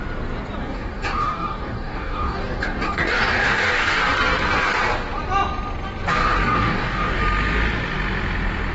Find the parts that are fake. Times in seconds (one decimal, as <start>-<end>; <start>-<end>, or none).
0.6-4.0; 6.2-7.2